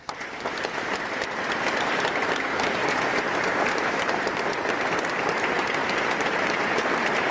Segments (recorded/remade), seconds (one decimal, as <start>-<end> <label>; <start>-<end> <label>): 0.0-2.8 recorded; 2.8-4.4 remade; 4.4-5.8 recorded; 5.8-6.6 remade; 6.6-7.3 recorded